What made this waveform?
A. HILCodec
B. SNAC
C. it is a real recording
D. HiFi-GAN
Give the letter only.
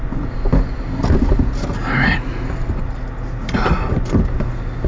C